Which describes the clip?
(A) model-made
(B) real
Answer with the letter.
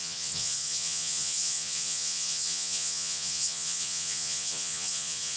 A